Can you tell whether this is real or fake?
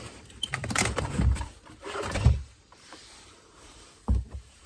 fake